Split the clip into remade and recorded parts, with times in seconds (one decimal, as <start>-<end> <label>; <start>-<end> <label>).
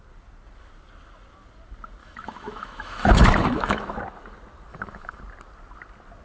0.0-2.0 recorded; 2.0-4.0 remade; 4.0-4.7 recorded; 4.7-5.2 remade; 5.2-6.2 recorded